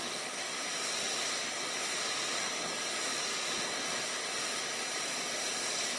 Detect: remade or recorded recorded